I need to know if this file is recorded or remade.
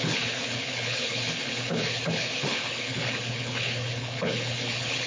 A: remade